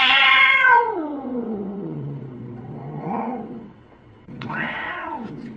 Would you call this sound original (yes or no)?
no